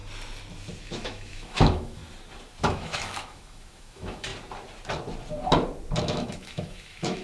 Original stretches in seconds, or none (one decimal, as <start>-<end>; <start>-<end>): 0.0-0.8; 2.0-2.6; 4.3-6.0